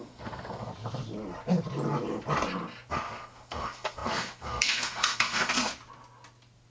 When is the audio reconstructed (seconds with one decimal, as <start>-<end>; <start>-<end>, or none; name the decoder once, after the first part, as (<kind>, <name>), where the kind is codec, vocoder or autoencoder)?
0.0-0.7 (codec, SNAC); 2.9-5.7